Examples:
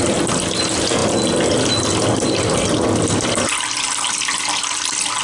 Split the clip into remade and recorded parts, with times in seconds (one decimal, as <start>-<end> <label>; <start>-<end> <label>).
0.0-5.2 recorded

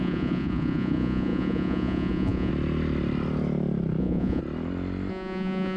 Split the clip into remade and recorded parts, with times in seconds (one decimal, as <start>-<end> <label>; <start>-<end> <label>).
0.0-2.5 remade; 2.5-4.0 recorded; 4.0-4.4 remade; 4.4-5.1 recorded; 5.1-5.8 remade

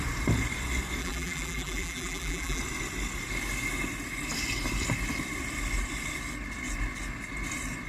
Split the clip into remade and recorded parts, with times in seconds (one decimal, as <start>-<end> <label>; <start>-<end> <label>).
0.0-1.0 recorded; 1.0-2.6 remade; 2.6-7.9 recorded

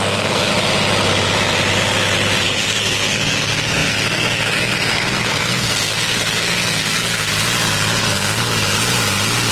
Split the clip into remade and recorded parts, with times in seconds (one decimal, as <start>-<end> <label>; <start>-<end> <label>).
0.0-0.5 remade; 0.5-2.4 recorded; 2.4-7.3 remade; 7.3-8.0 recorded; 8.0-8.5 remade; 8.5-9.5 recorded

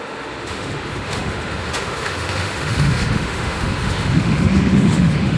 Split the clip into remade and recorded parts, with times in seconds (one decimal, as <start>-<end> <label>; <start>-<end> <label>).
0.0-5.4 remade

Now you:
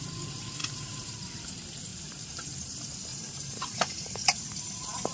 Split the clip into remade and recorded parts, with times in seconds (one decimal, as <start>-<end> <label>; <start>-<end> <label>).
0.0-0.6 recorded; 0.6-1.5 remade; 1.5-1.9 recorded; 1.9-2.5 remade; 2.5-3.1 recorded; 3.1-4.4 remade; 4.4-5.1 recorded

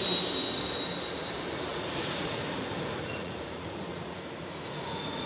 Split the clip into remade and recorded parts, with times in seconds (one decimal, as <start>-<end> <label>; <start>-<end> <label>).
0.0-1.7 recorded; 1.7-5.3 remade

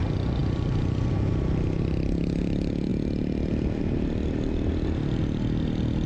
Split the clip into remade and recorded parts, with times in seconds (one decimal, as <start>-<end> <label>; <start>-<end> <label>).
0.0-6.1 recorded